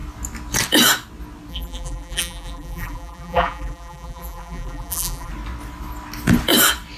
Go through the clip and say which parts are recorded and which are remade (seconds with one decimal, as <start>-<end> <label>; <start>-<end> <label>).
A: 0.0-1.5 recorded; 1.5-5.3 remade; 5.3-7.0 recorded